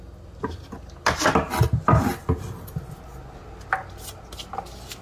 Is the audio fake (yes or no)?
no